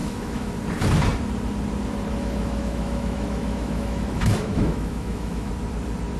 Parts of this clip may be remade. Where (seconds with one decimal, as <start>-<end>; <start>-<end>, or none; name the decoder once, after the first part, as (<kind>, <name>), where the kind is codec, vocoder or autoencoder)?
0.0-0.5 (autoencoder, DAC-VAE); 2.1-5.5